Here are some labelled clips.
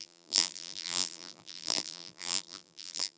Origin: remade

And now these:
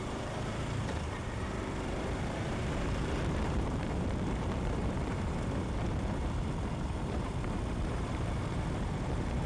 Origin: remade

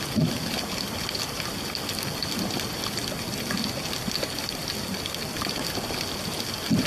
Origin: recorded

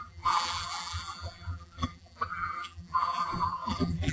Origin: remade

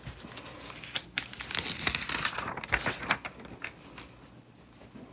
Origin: recorded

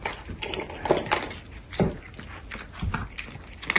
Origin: recorded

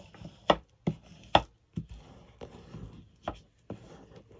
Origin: recorded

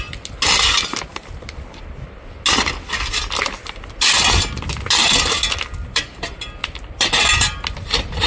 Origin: recorded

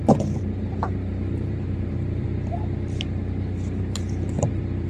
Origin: remade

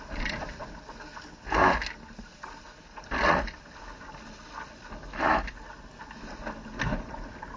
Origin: recorded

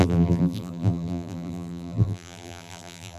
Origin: remade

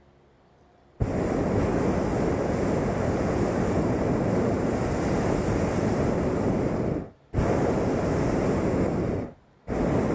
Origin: recorded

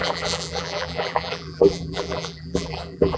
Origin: remade